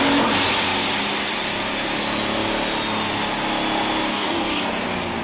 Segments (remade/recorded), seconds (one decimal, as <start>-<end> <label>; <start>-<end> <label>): 0.0-4.1 recorded; 4.1-4.7 remade; 4.7-5.2 recorded